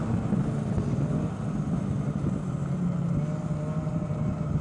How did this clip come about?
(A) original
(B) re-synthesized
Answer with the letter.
A